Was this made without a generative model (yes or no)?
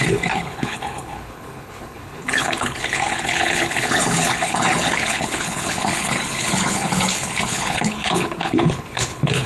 no